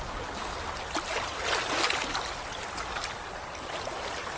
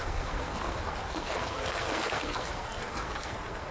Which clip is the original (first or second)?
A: first